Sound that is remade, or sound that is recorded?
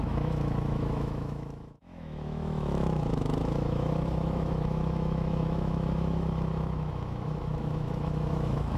remade